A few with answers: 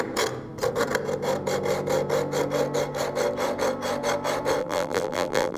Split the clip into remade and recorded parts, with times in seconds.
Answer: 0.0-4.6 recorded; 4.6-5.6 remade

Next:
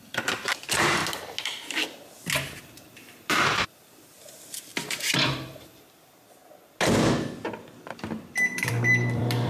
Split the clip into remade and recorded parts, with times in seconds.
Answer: 0.0-1.0 remade; 1.0-2.6 recorded; 2.6-6.4 remade; 6.4-7.5 recorded; 7.5-9.5 remade

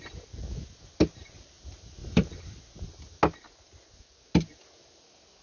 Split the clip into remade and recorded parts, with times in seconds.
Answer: 0.0-2.0 recorded; 2.0-2.6 remade; 2.6-5.4 recorded

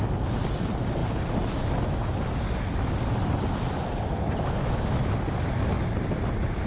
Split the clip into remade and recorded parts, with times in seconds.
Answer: 0.0-6.7 recorded

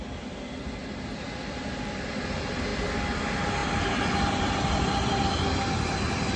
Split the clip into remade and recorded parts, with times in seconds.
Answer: 0.0-6.4 recorded